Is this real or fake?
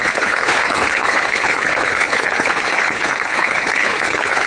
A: fake